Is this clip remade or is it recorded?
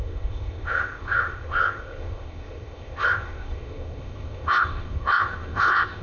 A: remade